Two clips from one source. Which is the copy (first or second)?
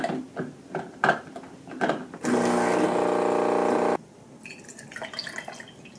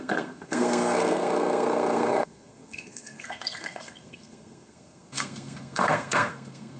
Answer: second